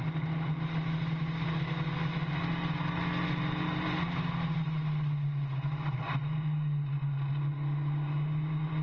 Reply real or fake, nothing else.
real